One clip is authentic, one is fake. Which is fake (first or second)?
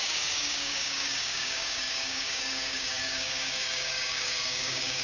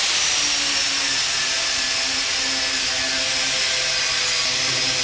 first